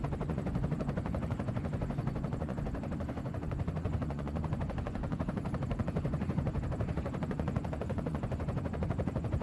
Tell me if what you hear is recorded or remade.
remade